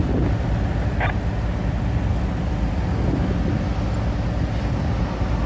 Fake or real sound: real